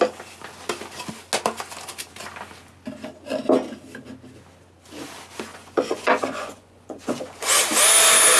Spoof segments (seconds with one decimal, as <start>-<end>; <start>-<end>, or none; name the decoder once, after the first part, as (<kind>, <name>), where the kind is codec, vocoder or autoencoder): 5.5-7.6 (vocoder, Vocos)